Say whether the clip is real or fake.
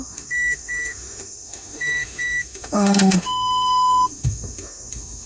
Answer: fake